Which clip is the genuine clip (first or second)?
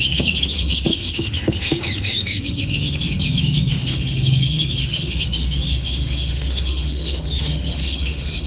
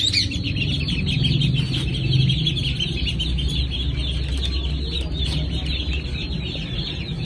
second